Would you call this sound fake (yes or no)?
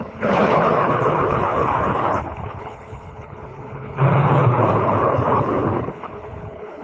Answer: yes